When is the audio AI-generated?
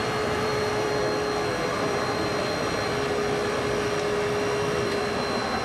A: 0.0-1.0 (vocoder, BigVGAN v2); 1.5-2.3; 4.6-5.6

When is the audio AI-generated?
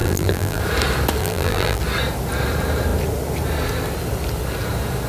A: 0.0-0.6 (vocoder, BigVGAN v2); 1.2-1.8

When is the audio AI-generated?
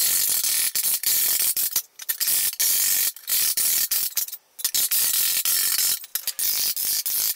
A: 0.9-2.1 (vocoder, BigVGAN v2); 3.3-4.6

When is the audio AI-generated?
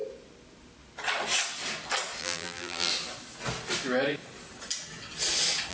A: 2.2-2.9 (vocoder, BigVGAN v2)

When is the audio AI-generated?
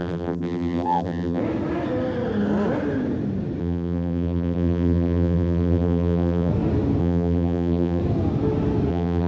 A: 0.0-1.4 (vocoder, BigVGAN v2); 3.6-6.5; 7.0-8.0; 8.9-9.3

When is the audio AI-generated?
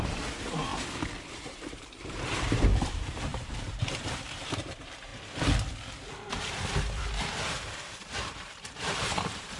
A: 0.0-0.7 (vocoder, BigVGAN v2); 1.3-5.1; 8.0-9.6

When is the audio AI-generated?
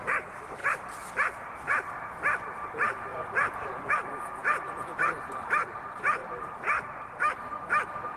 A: 0.0-0.6 (vocoder, BigVGAN v2); 1.4-8.2